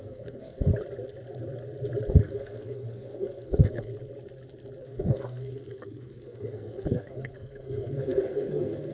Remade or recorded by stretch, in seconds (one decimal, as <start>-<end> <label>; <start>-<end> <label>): 0.0-0.7 remade; 0.7-2.3 recorded; 2.3-3.9 remade; 3.9-4.8 recorded; 4.8-8.9 remade